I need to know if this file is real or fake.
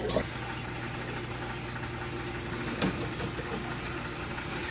real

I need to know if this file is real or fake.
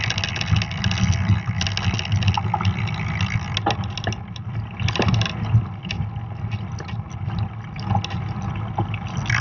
real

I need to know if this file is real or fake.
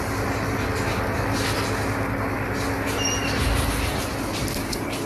real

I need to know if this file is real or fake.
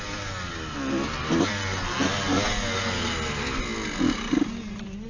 real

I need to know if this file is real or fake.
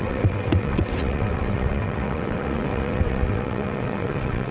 fake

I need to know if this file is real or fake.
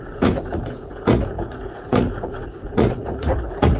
fake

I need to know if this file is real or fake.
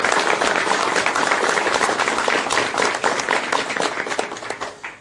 fake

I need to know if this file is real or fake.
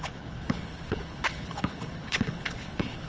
fake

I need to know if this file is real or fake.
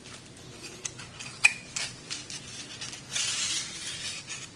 real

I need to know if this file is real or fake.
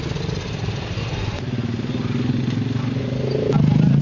real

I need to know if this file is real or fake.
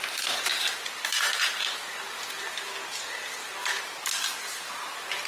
real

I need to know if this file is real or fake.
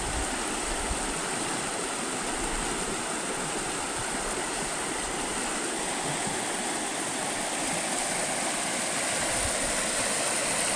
real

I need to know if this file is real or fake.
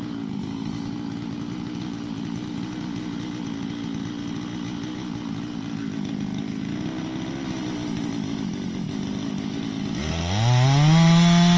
real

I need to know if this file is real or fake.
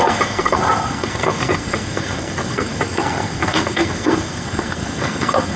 fake